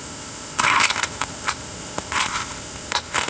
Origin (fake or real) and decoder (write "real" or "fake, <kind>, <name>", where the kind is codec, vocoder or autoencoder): fake, codec, ZipCodec